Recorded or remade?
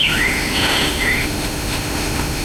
remade